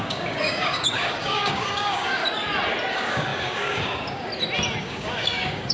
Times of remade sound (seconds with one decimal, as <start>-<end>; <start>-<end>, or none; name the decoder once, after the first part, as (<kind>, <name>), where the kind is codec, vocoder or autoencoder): 0.0-2.2 (codec, DAC); 2.9-4.3; 4.8-5.7